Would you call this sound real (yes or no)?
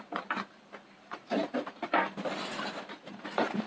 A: yes